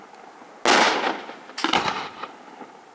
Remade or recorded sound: recorded